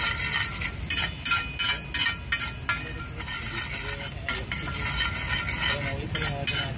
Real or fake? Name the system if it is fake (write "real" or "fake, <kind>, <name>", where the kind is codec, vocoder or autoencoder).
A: real